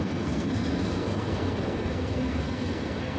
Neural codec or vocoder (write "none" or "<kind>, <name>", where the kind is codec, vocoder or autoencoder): codec, SNAC